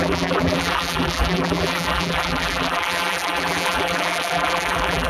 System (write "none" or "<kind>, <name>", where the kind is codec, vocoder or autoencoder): vocoder, BigVGAN v2